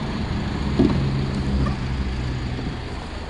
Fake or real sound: real